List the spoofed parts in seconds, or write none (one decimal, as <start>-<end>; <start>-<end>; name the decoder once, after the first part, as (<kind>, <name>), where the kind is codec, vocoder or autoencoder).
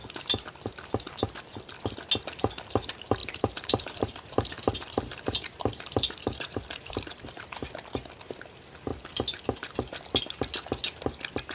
3.2-7.5 (vocoder, BigVGAN v2)